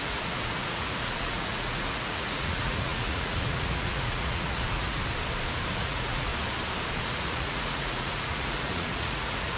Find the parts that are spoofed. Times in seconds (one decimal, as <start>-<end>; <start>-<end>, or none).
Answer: 0.0-5.0; 5.7-6.3; 7.0-9.6